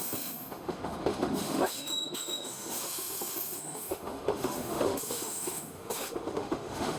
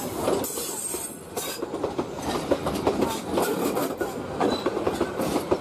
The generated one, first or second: first